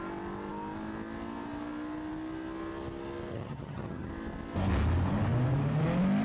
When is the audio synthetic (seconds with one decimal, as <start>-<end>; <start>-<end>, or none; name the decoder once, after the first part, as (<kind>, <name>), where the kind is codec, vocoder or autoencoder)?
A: 3.3-4.1 (vocoder, HiFi-GAN)